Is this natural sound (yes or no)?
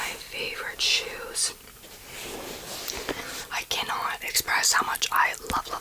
yes